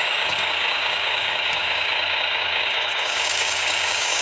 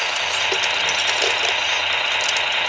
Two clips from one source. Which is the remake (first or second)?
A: first